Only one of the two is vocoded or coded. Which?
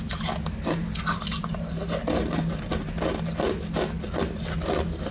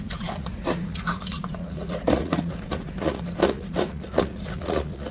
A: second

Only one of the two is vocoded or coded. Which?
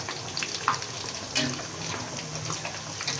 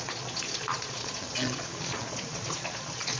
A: second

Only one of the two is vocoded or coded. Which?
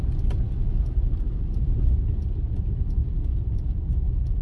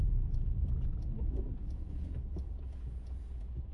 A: second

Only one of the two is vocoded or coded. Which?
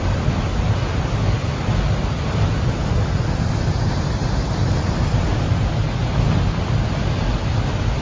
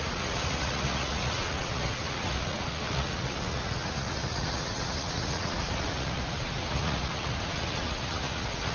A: second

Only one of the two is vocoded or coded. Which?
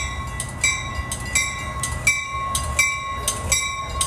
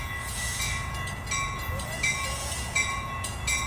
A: second